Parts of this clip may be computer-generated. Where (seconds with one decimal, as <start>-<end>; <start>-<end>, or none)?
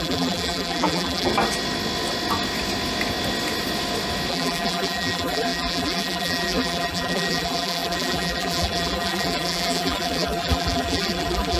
0.0-1.3; 4.3-11.6